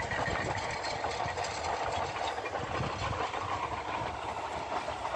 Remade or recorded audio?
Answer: recorded